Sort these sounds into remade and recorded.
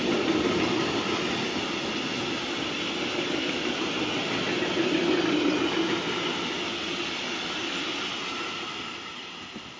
recorded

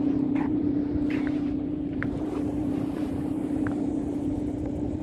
remade